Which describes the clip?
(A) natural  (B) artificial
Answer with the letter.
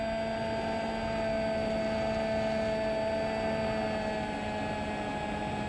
A